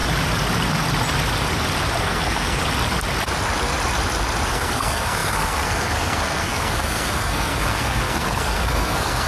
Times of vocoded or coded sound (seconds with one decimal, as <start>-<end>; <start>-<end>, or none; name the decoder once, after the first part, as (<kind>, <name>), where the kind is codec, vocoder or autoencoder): 2.0-2.6 (codec, SNAC); 4.5-9.3